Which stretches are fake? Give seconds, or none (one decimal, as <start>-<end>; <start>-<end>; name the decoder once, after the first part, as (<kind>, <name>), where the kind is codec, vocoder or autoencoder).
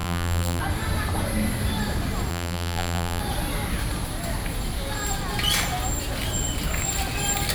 0.0-0.6 (vocoder, BigVGAN v2); 2.3-3.2